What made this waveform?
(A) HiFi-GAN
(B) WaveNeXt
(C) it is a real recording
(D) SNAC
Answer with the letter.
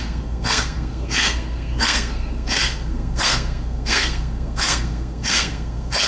D